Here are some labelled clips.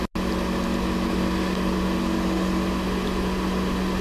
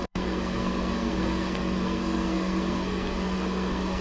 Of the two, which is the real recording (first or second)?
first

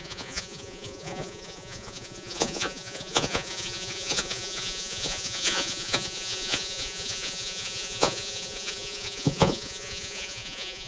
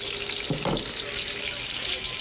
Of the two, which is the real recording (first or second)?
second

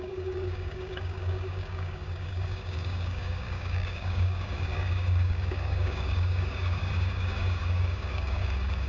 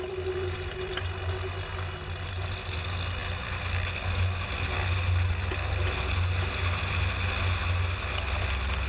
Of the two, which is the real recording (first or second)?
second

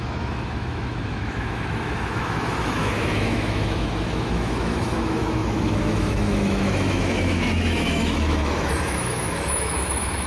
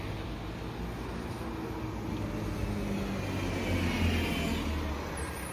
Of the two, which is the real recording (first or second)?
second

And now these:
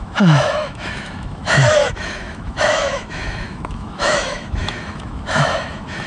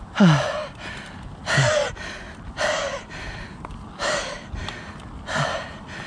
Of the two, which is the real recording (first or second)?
second